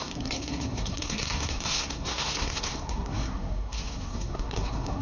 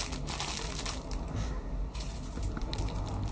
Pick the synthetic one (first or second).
first